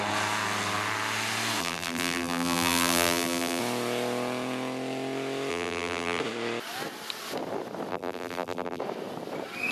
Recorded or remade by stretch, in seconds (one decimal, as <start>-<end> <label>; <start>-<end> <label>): 0.0-1.6 recorded; 1.6-3.6 remade; 3.6-5.5 recorded; 5.5-6.2 remade; 6.2-7.9 recorded; 7.9-8.8 remade; 8.8-9.7 recorded